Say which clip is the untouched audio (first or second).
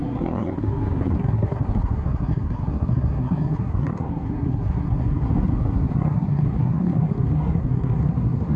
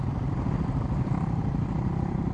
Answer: second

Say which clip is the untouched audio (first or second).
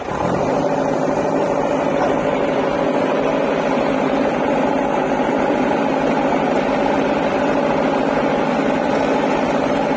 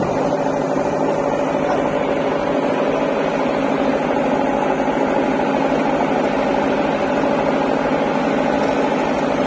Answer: second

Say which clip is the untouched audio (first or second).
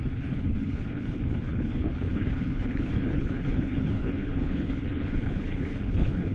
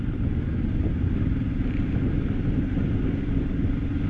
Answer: second